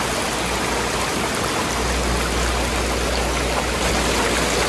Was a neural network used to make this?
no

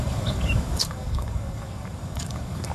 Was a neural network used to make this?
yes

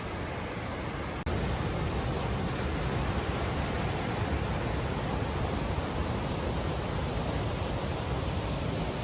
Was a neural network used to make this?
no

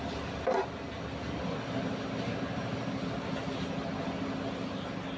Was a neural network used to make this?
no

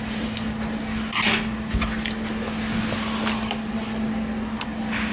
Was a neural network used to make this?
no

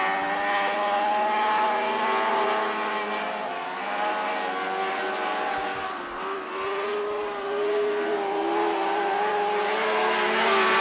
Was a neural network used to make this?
no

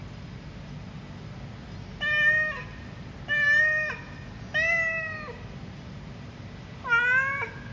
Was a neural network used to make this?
no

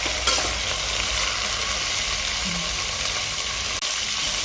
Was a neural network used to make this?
no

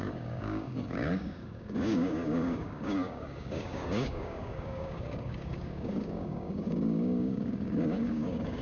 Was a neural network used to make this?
yes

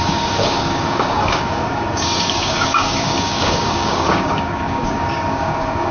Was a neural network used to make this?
yes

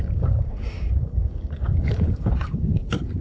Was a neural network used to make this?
yes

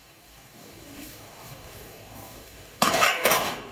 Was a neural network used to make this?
yes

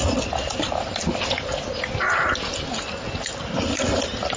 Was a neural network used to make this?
no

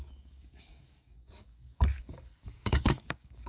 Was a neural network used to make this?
yes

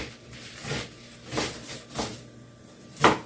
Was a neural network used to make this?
no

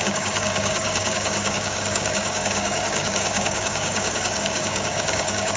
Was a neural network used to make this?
yes